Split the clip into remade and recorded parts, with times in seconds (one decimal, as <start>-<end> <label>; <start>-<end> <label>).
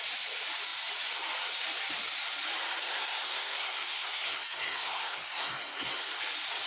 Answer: 0.0-2.8 recorded; 2.8-6.2 remade; 6.2-6.7 recorded